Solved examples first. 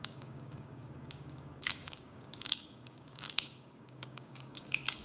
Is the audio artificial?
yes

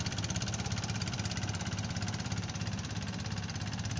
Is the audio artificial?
yes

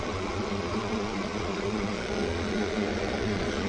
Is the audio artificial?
yes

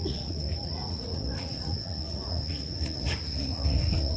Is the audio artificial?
yes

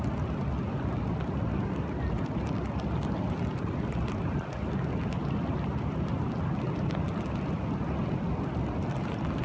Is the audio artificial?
no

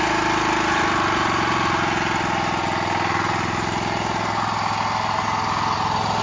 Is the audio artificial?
no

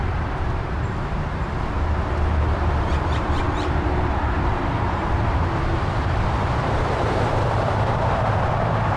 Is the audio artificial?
yes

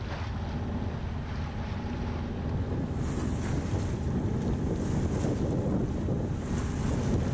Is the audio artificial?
no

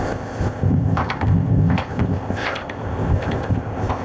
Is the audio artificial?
yes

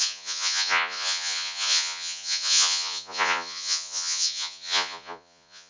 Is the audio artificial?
yes